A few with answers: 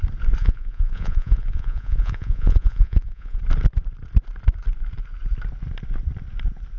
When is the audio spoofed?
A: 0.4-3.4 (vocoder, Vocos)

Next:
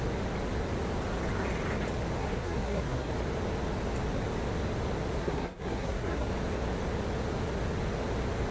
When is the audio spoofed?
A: 2.2-3.1 (codec, SNAC); 5.2-6.3

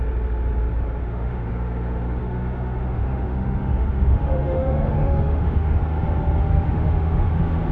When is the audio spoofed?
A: 1.0-1.5 (autoencoder, DAC-VAE); 2.2-5.8; 6.4-7.7

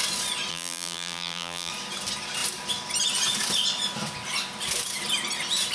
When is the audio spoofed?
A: 0.5-1.7 (vocoder, BigVGAN v2)

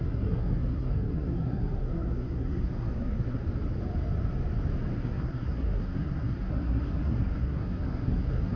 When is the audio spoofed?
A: 0.0-3.4 (codec, SNAC); 5.0-8.6